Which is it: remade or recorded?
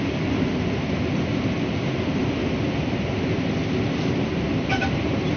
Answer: recorded